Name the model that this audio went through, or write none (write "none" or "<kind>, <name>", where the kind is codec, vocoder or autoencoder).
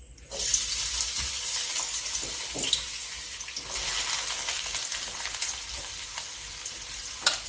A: none